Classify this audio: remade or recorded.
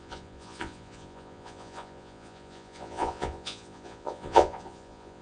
remade